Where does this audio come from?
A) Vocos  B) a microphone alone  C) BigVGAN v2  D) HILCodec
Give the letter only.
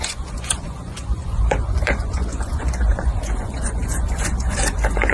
A